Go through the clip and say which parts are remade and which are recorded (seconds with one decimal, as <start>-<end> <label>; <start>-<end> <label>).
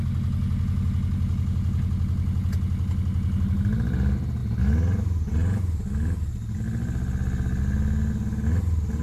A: 0.0-9.0 recorded